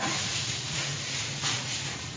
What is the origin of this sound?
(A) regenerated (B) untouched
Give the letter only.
A